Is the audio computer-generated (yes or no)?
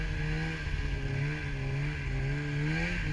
no